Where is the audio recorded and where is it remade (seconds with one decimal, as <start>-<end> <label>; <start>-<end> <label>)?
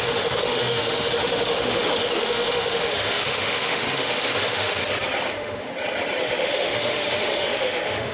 0.0-4.8 remade; 4.8-5.3 recorded; 5.3-5.7 remade; 5.7-6.2 recorded; 6.2-8.1 remade